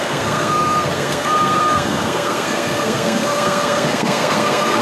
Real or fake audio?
fake